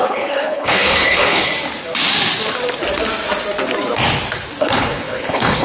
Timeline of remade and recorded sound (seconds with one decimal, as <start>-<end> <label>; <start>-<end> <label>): 0.0-1.5 remade; 1.5-4.6 recorded; 4.6-5.6 remade